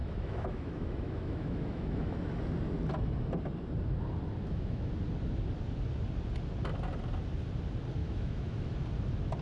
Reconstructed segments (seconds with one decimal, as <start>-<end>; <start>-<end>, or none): 0.0-2.4; 4.4-4.9; 8.0-8.7

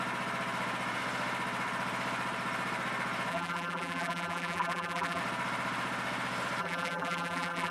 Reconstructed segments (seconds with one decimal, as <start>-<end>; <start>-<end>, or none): 3.3-5.2; 6.6-7.7

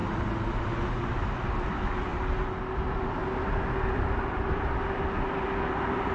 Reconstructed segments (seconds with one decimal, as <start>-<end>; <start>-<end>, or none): none